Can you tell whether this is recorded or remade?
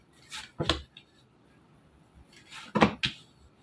recorded